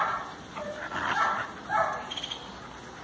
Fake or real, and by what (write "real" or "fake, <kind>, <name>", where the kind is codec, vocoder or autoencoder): real